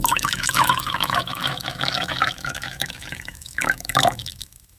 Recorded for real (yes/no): no